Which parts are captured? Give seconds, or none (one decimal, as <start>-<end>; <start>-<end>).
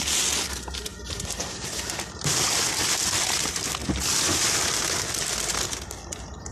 0.0-6.5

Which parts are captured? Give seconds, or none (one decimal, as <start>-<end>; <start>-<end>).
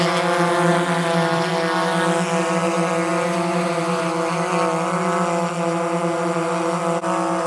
0.0-3.1; 4.0-7.5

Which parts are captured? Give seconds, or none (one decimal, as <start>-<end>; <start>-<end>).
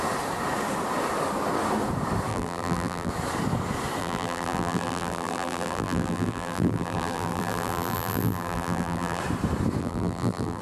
0.0-2.3; 3.1-4.0; 9.2-9.8